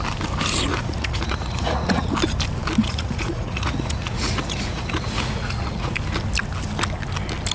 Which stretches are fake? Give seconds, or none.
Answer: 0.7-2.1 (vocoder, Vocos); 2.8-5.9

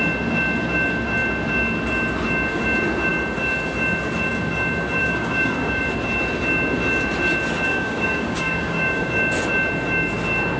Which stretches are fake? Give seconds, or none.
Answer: 5.0-5.8 (codec, DAC); 7.7-9.1

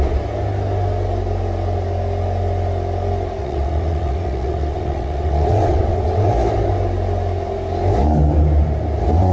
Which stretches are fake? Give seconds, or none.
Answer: 3.4-6.3 (vocoder, WaveNeXt)